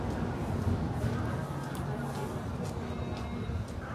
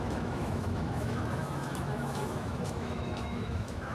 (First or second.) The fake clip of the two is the second